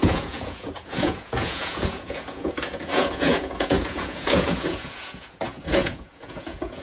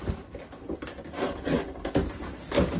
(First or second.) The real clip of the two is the second